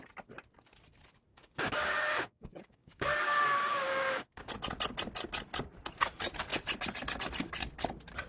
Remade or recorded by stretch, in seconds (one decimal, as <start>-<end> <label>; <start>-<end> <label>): 0.0-1.3 recorded; 1.3-4.5 remade; 4.5-8.3 recorded